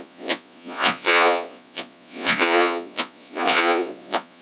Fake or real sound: fake